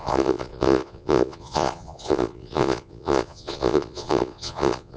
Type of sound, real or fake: fake